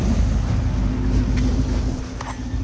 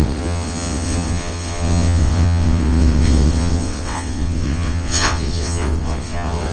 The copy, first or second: second